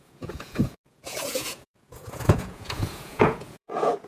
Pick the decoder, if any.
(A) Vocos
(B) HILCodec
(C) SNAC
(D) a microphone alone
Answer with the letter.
A